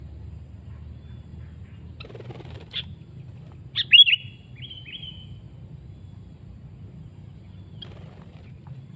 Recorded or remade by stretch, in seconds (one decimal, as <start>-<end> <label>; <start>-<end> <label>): 0.0-9.0 recorded